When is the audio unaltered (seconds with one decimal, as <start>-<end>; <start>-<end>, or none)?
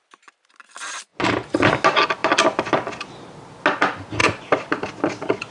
0.0-2.2; 3.1-4.2; 4.9-5.5